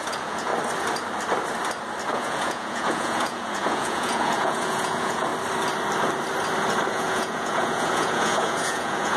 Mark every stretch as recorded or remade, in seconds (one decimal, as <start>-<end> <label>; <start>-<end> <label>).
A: 0.0-0.5 remade; 0.5-2.1 recorded; 2.1-5.3 remade; 5.3-6.9 recorded; 6.9-9.2 remade